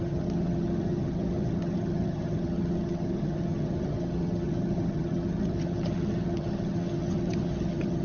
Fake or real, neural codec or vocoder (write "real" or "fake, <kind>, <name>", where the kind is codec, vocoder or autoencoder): fake, vocoder, HiFi-GAN